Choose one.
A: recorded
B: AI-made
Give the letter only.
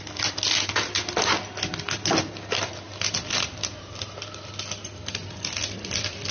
A